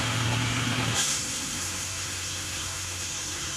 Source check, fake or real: fake